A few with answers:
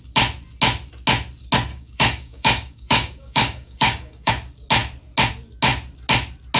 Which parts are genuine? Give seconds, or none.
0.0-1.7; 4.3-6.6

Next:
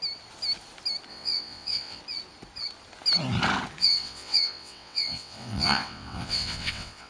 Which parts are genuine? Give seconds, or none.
0.0-1.1; 2.0-3.8

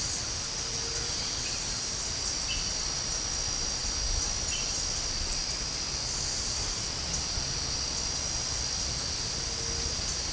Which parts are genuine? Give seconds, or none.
0.0-10.3

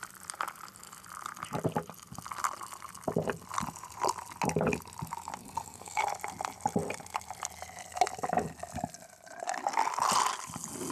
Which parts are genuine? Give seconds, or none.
0.0-5.4; 6.0-10.9

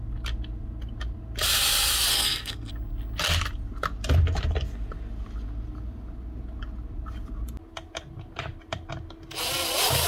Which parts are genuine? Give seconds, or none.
0.0-2.1; 2.7-10.1